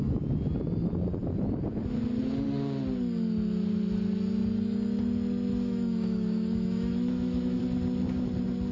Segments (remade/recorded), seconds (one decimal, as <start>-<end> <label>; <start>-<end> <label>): 0.0-5.5 recorded; 5.5-7.6 remade; 7.6-8.7 recorded